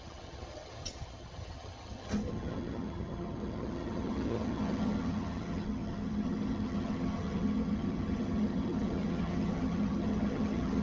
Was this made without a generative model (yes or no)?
no